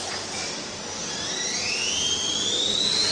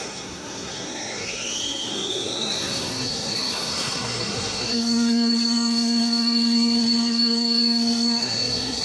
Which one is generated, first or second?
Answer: second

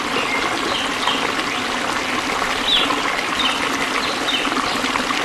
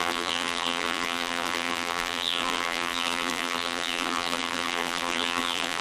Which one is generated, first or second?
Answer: second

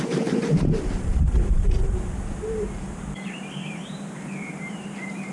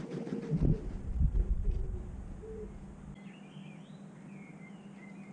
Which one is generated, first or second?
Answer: first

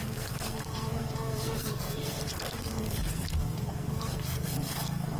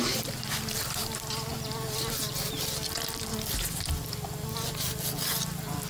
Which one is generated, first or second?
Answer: first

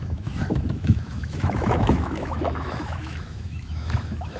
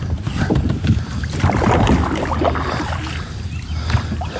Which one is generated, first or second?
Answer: first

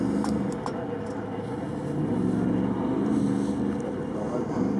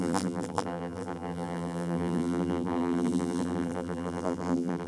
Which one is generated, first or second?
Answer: second